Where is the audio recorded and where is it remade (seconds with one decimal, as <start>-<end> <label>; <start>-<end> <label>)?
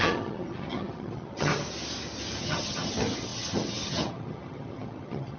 0.0-1.5 remade; 1.5-2.4 recorded; 2.4-5.4 remade